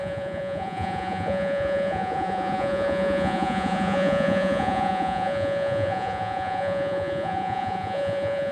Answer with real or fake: fake